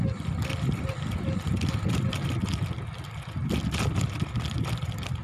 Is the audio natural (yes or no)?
yes